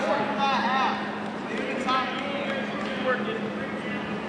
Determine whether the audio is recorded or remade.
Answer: recorded